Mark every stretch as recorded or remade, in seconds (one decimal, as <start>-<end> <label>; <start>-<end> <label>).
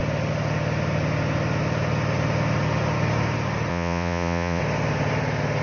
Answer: 0.0-3.7 recorded; 3.7-4.6 remade; 4.6-5.6 recorded